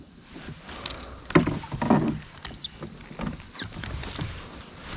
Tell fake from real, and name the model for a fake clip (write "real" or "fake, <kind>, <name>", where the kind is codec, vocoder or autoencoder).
real